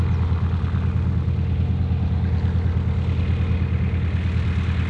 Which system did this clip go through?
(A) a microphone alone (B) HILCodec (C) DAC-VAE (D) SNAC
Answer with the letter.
A